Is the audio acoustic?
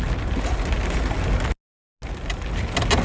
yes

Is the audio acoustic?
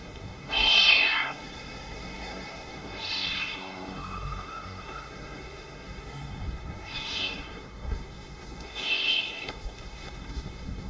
no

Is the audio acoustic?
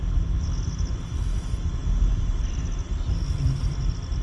yes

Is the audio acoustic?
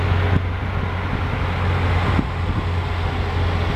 yes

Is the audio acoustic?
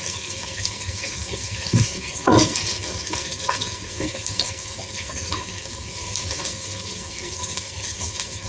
no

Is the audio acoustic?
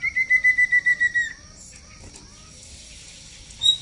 yes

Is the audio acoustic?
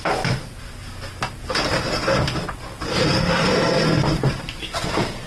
yes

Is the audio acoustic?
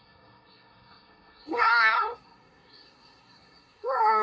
no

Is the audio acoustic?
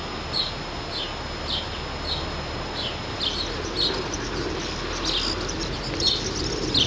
yes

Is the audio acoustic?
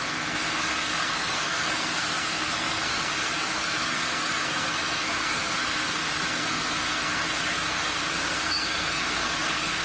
no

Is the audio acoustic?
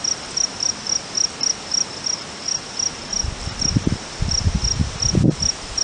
yes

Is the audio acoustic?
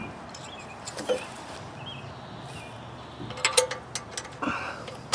yes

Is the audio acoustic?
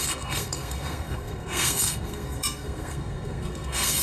no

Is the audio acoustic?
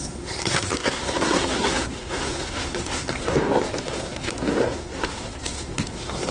no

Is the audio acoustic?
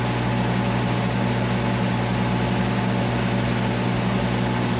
yes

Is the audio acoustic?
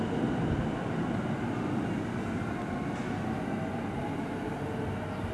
yes